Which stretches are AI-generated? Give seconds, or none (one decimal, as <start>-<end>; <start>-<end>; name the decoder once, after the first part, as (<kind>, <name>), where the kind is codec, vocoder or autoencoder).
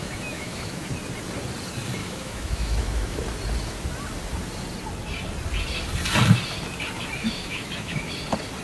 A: 0.0-0.9 (autoencoder, DAC-VAE); 2.0-3.2; 7.2-8.1